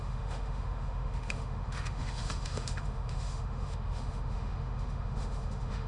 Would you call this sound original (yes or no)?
no